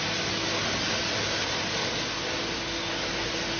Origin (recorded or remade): recorded